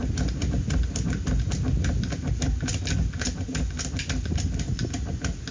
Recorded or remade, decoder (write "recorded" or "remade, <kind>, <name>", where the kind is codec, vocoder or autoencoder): recorded